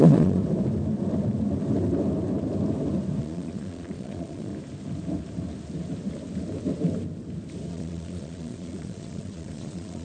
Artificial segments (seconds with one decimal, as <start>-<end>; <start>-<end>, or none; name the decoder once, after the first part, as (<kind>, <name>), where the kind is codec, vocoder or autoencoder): 0.0-0.4 (vocoder, Vocos); 3.2-4.5; 7.7-10.0